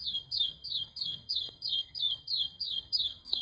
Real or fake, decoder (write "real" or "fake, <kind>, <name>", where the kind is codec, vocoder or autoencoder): fake, codec, SNAC